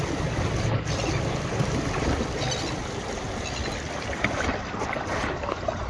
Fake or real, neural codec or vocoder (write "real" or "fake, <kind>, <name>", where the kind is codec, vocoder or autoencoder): real